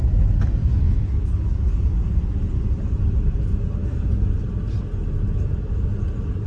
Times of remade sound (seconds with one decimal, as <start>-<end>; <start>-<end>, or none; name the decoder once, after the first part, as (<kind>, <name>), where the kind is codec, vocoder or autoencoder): 0.6-1.7 (autoencoder, DAC-VAE); 3.8-4.4